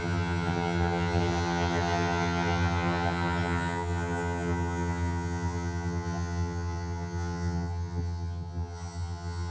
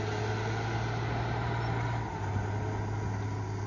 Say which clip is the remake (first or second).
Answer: first